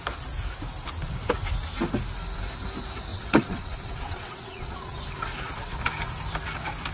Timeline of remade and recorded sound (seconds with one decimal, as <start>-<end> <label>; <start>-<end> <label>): 0.0-3.1 recorded; 3.1-5.0 remade; 5.0-6.9 recorded